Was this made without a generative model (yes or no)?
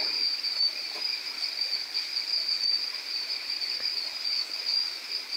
yes